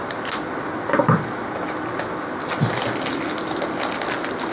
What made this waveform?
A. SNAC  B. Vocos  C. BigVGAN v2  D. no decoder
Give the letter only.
D